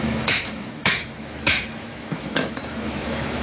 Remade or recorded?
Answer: remade